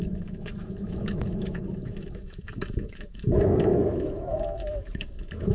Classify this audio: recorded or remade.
remade